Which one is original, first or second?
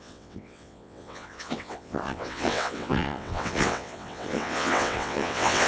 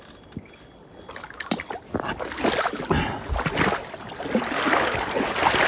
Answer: second